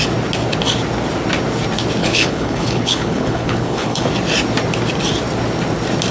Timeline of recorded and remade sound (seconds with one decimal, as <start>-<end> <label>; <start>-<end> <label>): 0.0-2.0 recorded; 2.0-4.1 remade; 4.1-6.1 recorded